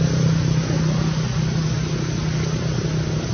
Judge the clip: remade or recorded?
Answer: recorded